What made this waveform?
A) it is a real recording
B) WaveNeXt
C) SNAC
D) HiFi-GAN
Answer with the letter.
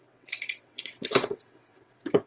B